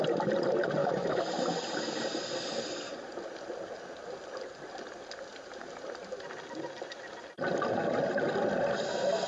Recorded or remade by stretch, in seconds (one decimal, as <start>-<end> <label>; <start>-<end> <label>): 0.0-0.8 recorded; 0.8-1.3 remade; 1.3-9.3 recorded